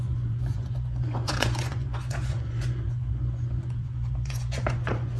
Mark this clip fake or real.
fake